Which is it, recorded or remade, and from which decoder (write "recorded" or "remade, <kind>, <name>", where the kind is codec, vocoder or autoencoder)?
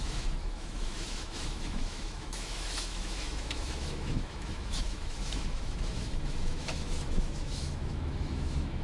remade, autoencoder, DAC-VAE